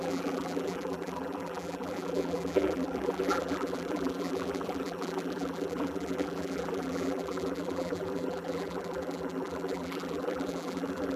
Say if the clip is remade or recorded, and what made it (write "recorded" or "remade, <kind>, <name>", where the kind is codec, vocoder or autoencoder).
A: remade, vocoder, BigVGAN v2